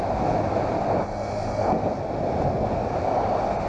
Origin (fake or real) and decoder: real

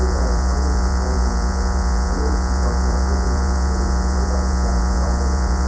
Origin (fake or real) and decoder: fake, vocoder, Vocos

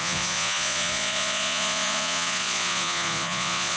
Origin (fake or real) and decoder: fake, vocoder, Vocos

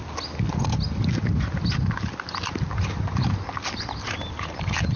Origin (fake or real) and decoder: real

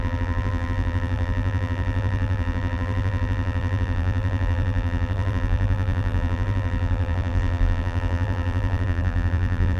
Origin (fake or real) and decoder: fake, vocoder, BigVGAN v2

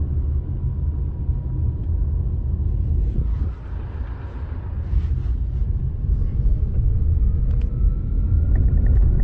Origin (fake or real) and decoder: real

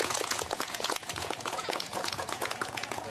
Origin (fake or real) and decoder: fake, vocoder, Vocos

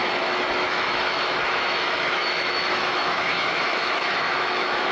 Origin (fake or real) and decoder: fake, autoencoder, DAC-VAE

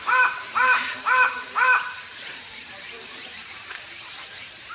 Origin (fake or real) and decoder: fake, vocoder, BigVGAN v2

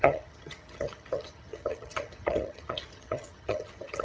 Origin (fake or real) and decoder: fake, vocoder, HiFi-GAN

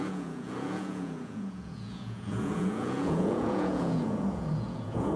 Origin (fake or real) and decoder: fake, vocoder, Vocos